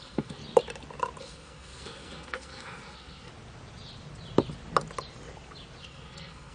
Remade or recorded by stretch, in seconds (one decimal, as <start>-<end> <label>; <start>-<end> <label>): 0.0-0.4 remade; 0.4-1.2 recorded; 1.2-3.3 remade; 3.3-5.8 recorded; 5.8-6.5 remade